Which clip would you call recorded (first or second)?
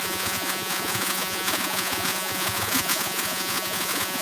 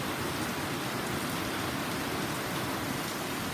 second